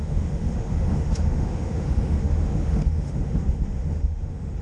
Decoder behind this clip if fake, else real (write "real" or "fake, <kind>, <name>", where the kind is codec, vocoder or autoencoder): fake, autoencoder, DAC-VAE